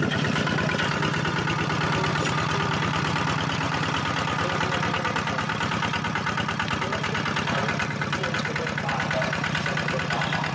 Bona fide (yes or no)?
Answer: yes